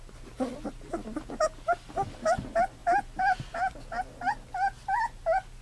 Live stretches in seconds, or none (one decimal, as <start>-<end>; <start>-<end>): 0.0-5.6